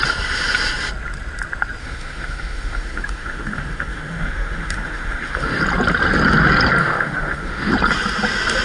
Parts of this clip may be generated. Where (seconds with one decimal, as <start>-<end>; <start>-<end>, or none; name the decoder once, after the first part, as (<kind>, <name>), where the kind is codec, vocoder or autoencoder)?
1.8-5.6 (autoencoder, DAC-VAE); 6.8-7.7